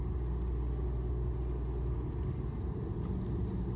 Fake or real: real